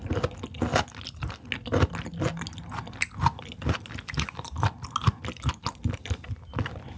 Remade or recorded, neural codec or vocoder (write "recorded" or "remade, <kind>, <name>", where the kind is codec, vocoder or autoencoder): recorded